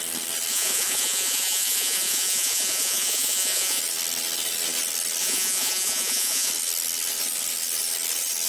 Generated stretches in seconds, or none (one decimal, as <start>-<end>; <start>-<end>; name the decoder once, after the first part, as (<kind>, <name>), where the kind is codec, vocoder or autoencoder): 0.5-3.8 (vocoder, Vocos); 5.2-6.5